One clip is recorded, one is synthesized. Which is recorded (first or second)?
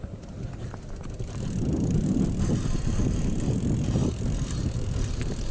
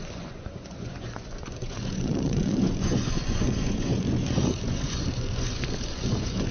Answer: first